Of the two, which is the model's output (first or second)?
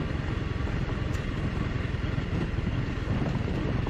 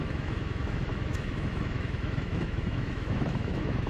second